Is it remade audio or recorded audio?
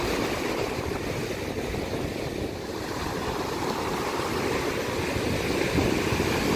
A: recorded